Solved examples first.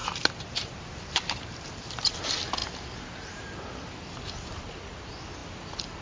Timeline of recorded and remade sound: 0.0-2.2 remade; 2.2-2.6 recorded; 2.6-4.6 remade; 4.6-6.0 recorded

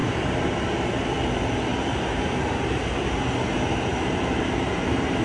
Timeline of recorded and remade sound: 0.0-1.0 remade; 1.0-1.7 recorded; 1.7-3.2 remade; 3.2-3.9 recorded; 3.9-5.2 remade